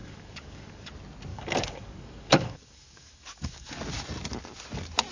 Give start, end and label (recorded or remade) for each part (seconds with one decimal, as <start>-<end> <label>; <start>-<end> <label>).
0.0-0.9 remade; 0.9-1.3 recorded; 1.3-3.7 remade; 3.7-5.1 recorded